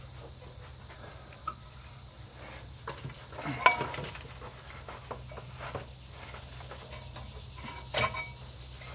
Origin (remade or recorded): recorded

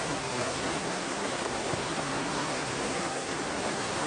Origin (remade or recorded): remade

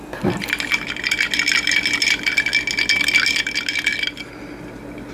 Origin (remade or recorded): recorded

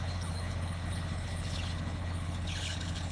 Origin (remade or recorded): remade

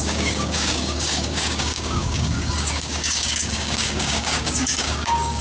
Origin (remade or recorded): remade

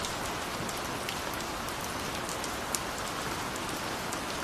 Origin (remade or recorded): recorded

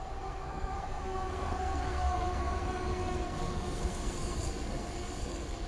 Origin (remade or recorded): remade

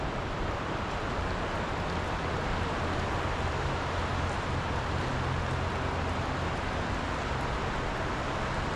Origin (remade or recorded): recorded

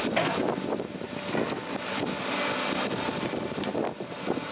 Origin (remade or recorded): recorded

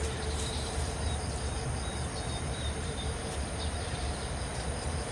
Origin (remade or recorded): remade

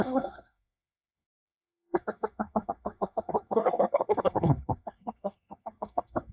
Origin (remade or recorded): remade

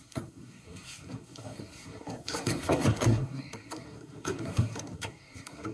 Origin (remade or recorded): remade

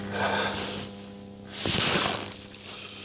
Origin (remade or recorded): recorded